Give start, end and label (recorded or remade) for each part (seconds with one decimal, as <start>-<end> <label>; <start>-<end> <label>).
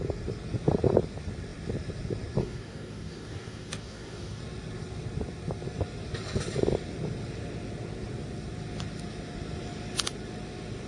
0.0-2.4 recorded; 2.4-4.4 remade; 4.4-10.9 recorded